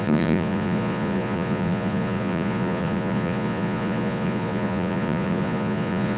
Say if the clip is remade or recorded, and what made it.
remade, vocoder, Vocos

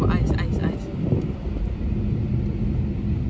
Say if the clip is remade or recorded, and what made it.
recorded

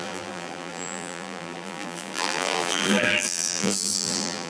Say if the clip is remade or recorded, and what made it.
remade, vocoder, BigVGAN v2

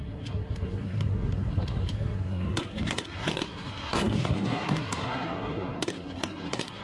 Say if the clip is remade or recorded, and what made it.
remade, codec, SNAC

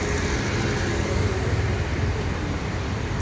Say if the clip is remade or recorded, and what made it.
recorded